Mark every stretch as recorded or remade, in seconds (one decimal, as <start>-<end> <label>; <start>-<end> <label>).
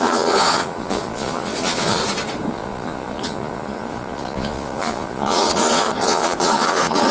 0.0-2.0 remade; 2.0-2.5 recorded; 2.5-7.1 remade